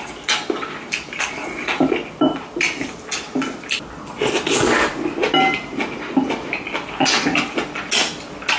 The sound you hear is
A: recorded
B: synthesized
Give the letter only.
A